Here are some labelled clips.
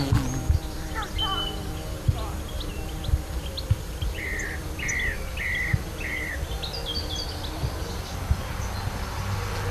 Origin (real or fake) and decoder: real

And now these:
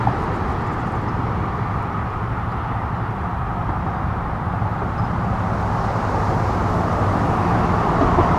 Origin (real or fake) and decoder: real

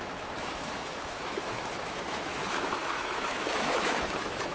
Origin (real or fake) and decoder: fake, autoencoder, DAC-VAE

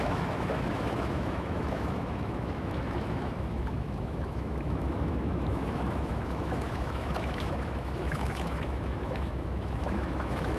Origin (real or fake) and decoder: fake, autoencoder, DAC-VAE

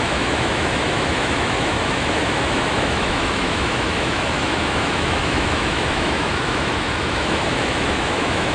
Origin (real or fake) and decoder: fake, autoencoder, DAC-VAE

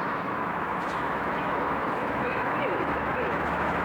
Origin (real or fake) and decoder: fake, autoencoder, DAC-VAE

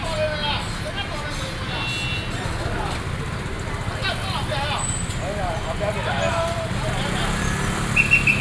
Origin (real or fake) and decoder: real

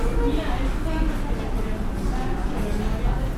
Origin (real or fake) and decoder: real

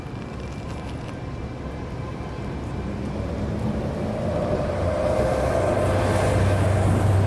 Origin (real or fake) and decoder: real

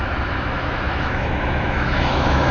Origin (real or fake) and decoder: fake, autoencoder, DAC-VAE